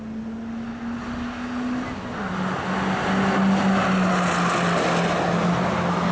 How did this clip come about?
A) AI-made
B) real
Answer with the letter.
B